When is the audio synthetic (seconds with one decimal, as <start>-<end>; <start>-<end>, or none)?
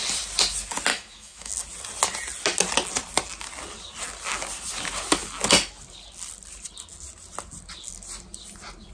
0.9-1.5